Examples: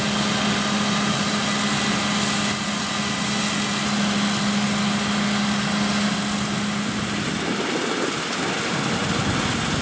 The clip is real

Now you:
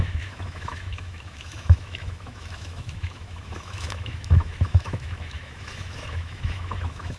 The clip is fake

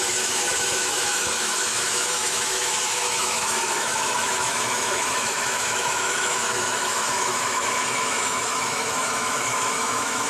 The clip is fake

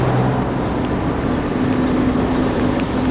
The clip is real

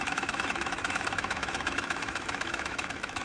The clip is fake